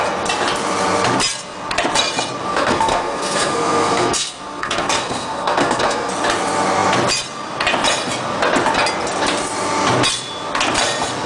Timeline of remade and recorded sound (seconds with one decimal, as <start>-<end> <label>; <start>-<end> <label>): 0.0-2.5 recorded; 2.5-6.1 remade; 6.1-11.3 recorded